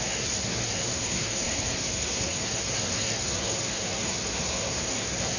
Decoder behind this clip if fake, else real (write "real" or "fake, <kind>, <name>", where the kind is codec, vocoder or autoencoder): fake, codec, SNAC